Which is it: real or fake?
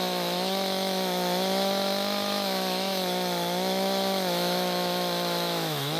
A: fake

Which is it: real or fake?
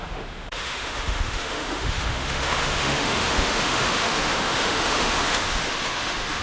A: fake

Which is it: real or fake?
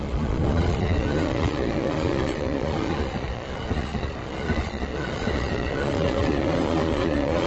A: fake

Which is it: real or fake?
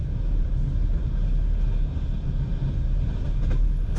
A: real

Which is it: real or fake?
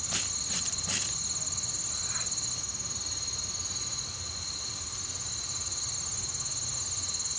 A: real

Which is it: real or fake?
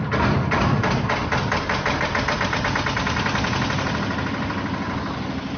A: fake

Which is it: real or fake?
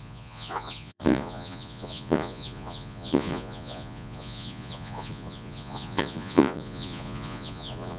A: fake